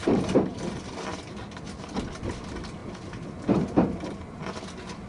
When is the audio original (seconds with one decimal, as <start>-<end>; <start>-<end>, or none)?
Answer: 1.0-5.1